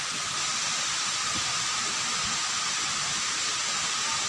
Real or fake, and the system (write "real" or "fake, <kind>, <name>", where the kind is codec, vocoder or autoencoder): real